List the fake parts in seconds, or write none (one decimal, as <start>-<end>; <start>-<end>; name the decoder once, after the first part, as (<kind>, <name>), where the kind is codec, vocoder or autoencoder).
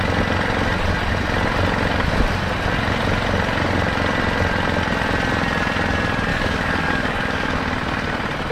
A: 6.3-7.6 (codec, DAC)